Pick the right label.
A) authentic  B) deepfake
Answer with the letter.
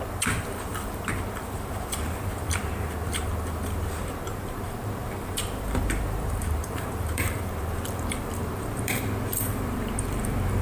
B